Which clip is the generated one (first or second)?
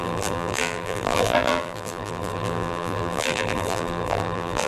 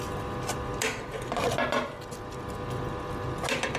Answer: first